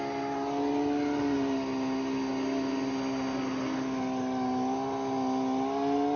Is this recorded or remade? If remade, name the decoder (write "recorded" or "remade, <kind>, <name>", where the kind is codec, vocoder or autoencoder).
recorded